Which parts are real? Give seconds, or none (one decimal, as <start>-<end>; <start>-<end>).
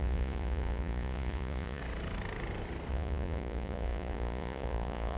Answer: 1.8-2.9